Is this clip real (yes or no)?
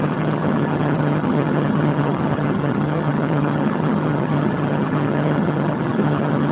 no